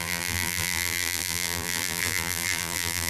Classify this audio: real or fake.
fake